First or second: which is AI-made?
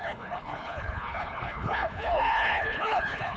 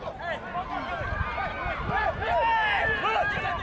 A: first